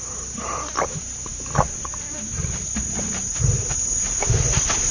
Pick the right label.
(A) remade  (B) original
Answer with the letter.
B